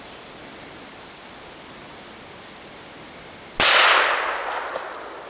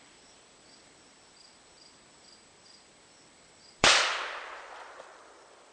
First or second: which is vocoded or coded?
second